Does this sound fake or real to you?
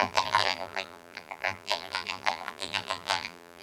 fake